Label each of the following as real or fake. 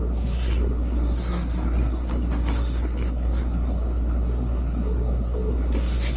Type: fake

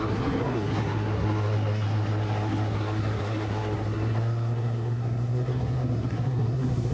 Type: fake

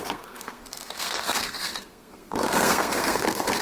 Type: fake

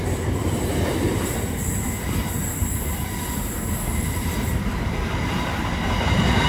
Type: real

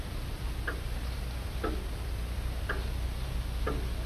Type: real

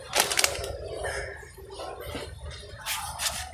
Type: real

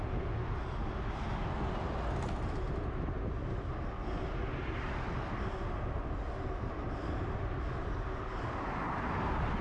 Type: real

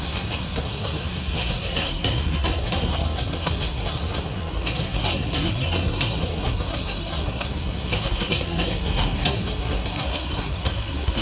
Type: fake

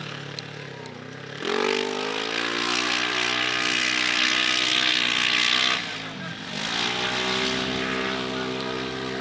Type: real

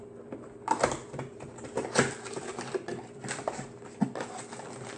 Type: real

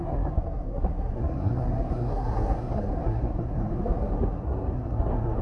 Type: fake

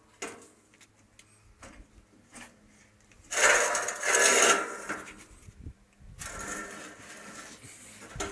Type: real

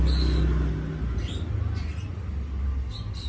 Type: real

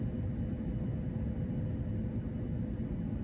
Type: real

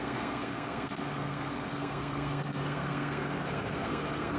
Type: fake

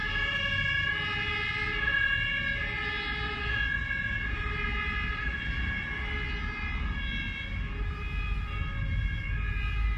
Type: real